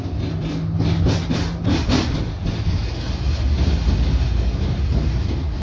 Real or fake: real